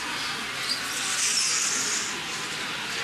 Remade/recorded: recorded